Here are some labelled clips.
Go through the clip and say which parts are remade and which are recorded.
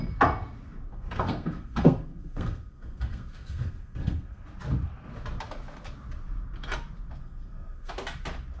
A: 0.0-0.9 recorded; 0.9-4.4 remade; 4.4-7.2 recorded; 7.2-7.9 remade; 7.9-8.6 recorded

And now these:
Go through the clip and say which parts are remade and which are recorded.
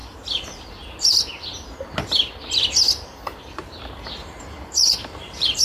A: 0.0-3.4 recorded; 3.4-5.6 remade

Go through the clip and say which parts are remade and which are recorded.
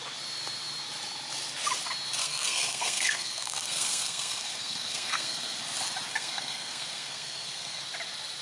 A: 0.0-2.2 recorded; 2.2-5.6 remade; 5.6-6.1 recorded; 6.1-7.8 remade; 7.8-8.4 recorded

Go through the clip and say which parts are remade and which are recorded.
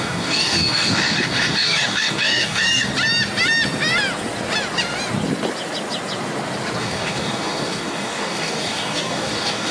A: 0.0-2.9 remade; 2.9-6.8 recorded; 6.8-9.7 remade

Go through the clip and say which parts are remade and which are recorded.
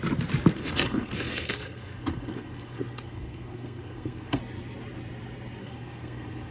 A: 0.0-0.5 recorded; 0.5-4.4 remade; 4.4-5.6 recorded; 5.6-6.5 remade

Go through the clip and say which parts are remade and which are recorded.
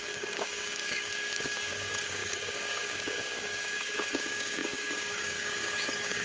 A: 0.0-6.2 remade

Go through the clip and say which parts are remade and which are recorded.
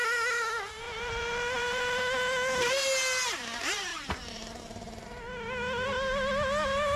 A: 0.0-0.8 recorded; 0.8-2.0 remade; 2.0-3.9 recorded; 3.9-4.8 remade; 4.8-7.0 recorded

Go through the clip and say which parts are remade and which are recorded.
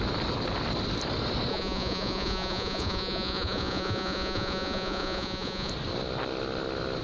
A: 0.0-1.5 recorded; 1.5-5.7 remade; 5.7-7.0 recorded